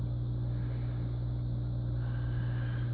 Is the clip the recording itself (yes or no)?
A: yes